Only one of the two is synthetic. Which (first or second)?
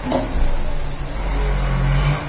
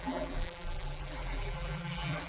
second